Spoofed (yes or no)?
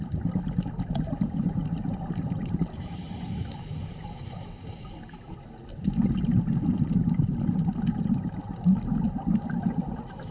no